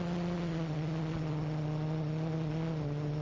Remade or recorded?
recorded